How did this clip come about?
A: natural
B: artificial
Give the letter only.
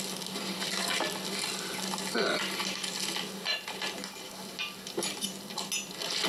A